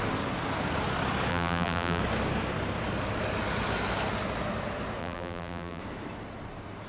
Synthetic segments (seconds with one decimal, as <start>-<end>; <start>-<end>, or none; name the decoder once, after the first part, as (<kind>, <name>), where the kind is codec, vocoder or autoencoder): 1.3-2.0 (vocoder, BigVGAN v2); 5.0-5.8